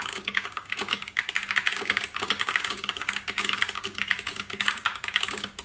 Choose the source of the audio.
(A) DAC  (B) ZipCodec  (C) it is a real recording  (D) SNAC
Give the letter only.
A